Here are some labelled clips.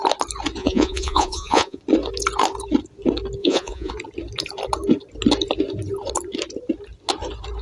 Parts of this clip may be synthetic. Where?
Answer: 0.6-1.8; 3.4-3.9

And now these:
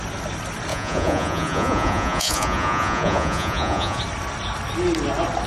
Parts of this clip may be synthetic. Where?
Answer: 0.7-4.0

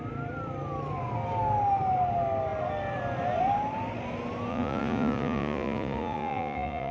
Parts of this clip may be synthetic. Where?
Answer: 4.5-6.9